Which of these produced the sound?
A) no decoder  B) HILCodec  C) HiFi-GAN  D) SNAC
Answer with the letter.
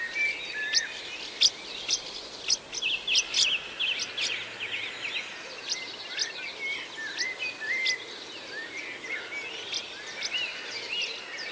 A